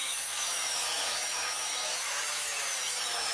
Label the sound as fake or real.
fake